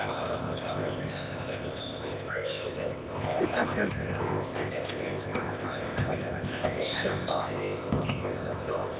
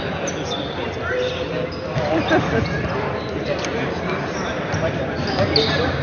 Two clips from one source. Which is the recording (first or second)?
second